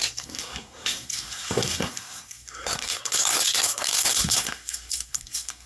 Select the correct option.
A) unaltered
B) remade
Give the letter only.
B